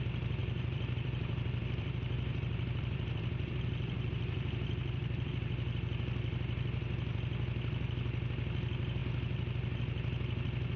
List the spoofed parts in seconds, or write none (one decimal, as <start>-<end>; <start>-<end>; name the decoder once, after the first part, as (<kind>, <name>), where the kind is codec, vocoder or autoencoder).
0.4-5.3 (vocoder, BigVGAN v2)